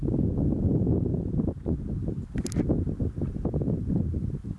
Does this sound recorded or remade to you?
recorded